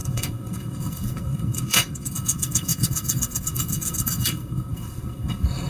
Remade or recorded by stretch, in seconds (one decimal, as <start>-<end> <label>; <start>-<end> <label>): 0.0-5.7 remade